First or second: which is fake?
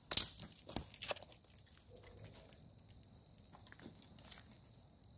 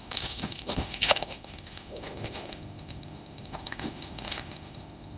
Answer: second